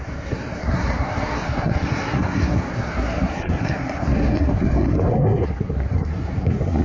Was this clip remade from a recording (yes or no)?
yes